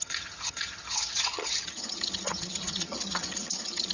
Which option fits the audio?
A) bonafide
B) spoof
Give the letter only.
B